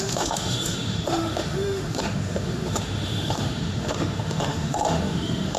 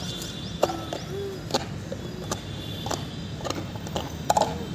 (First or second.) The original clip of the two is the second